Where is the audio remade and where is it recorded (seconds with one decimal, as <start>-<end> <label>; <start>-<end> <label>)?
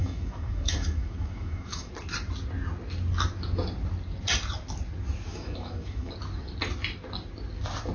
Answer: 0.0-1.9 remade; 1.9-5.3 recorded; 5.3-6.1 remade; 6.1-7.9 recorded